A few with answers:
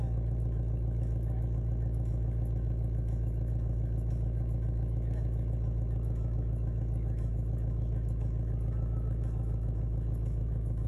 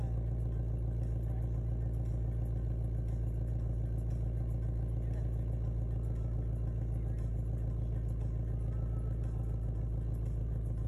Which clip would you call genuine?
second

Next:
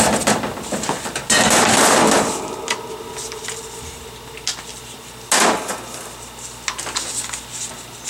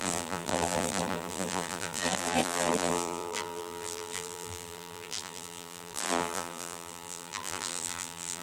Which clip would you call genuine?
first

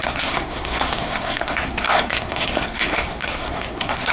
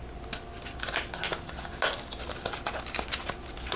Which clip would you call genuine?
second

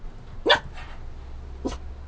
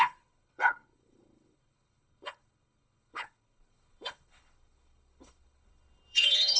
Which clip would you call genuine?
first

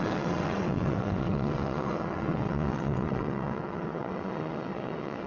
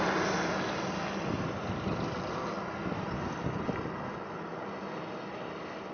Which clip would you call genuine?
second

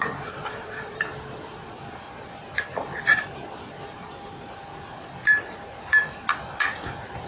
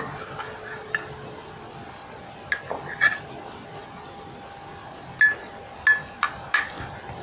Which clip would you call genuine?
second